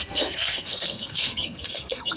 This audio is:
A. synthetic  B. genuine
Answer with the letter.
A